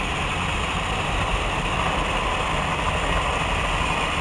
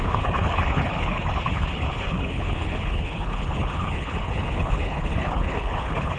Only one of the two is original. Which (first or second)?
first